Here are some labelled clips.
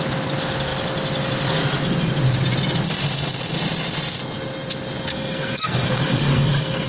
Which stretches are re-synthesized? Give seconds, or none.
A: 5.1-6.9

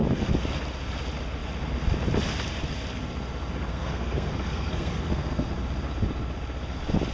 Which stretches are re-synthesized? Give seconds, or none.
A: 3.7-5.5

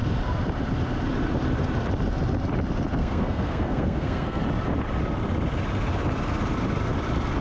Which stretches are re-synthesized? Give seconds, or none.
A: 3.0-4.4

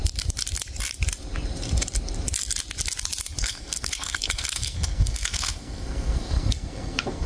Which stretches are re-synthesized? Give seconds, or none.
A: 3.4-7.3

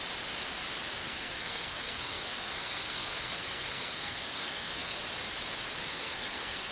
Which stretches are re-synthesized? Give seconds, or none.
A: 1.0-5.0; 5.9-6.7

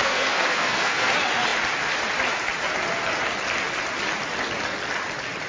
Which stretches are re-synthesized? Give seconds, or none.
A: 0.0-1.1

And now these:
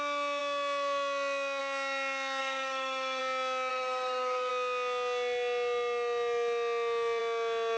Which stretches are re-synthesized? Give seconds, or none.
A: 2.4-3.2; 3.7-4.5

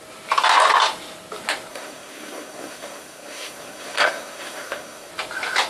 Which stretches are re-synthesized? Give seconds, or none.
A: 1.7-5.1